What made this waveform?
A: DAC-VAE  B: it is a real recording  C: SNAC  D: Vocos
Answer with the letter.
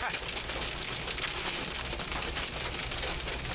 B